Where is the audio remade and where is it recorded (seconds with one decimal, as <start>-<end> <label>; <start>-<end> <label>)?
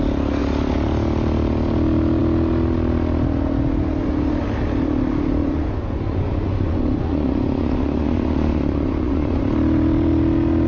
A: 0.0-5.4 recorded; 5.4-9.4 remade; 9.4-10.7 recorded